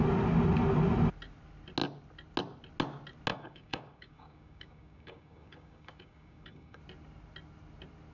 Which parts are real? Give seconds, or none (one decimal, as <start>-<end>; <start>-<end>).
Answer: 0.0-3.3; 6.8-8.1